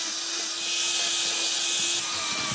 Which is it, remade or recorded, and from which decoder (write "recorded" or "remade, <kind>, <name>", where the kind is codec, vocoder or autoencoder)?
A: recorded